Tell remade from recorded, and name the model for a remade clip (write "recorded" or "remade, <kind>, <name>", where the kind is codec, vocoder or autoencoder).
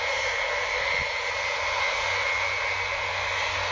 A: recorded